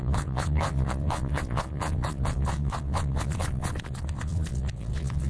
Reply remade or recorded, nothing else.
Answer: remade